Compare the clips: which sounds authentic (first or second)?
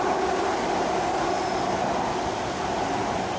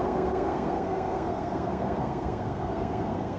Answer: first